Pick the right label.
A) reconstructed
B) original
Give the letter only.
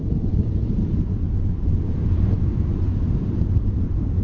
A